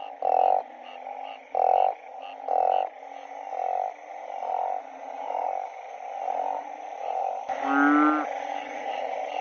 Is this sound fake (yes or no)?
no